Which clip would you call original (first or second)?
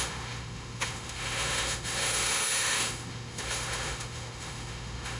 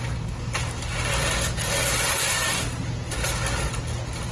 second